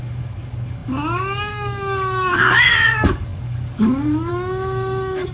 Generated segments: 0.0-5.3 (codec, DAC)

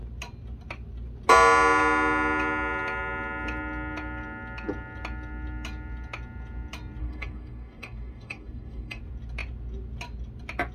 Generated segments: 7.0-9.0 (codec, DAC)

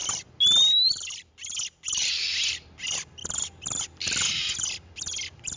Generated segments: none

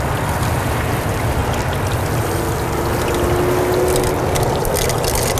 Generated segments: none

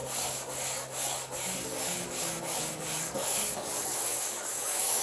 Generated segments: 0.0-5.0 (codec, DAC)

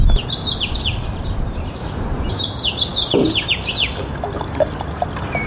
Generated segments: none